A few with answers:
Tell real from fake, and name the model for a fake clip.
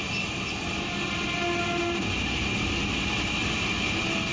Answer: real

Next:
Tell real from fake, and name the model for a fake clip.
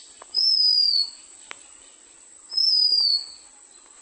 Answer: real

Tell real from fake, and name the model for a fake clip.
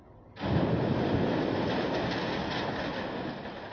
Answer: real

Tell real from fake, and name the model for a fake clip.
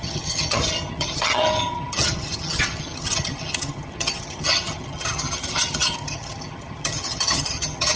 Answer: fake, vocoder, HiFi-GAN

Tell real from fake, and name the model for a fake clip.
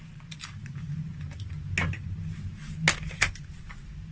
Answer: real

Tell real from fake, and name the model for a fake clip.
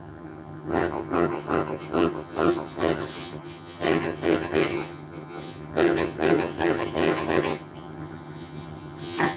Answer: fake, vocoder, HiFi-GAN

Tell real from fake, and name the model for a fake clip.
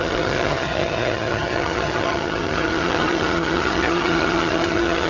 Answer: fake, vocoder, HiFi-GAN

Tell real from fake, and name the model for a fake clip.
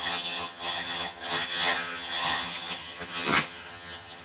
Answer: fake, vocoder, HiFi-GAN